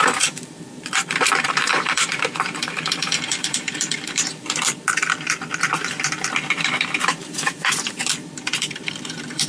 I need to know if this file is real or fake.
fake